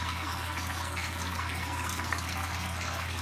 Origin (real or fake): fake